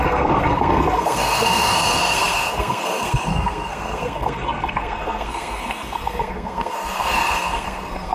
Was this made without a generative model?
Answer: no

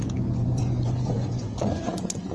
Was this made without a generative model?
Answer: no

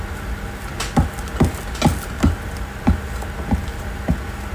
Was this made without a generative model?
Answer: yes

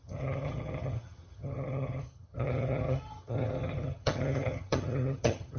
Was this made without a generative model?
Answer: no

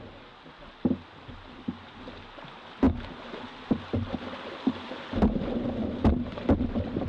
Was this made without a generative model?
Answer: yes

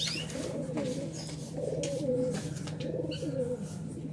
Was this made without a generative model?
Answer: yes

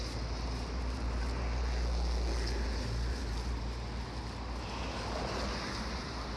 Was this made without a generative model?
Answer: yes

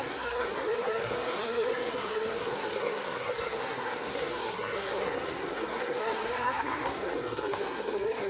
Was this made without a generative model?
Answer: no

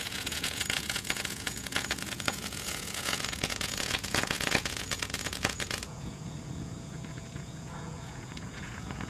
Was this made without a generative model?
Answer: no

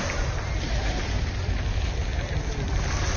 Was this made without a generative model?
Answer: yes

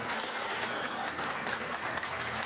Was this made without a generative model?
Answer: no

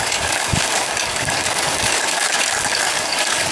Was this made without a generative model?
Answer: no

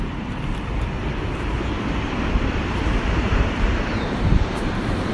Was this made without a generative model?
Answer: no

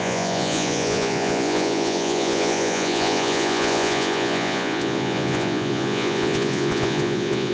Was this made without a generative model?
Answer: no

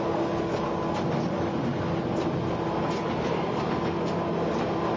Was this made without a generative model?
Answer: yes